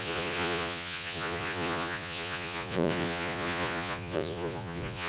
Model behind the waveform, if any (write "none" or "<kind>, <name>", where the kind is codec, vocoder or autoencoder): vocoder, Vocos